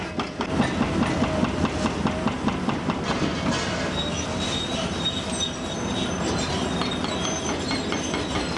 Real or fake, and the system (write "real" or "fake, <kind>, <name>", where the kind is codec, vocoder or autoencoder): real